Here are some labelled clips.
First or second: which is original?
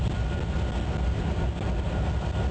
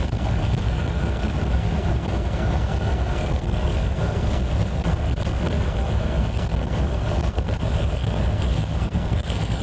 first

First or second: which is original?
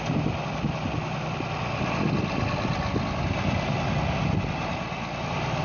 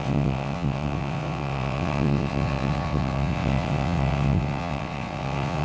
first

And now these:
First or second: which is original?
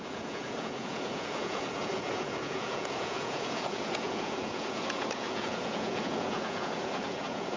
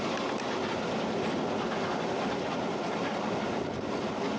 second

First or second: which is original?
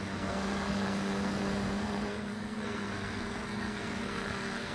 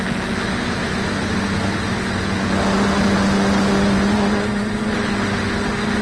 second